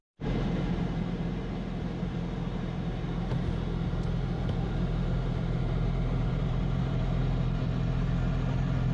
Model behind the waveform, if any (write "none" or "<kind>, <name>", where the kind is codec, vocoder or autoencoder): vocoder, BigVGAN v2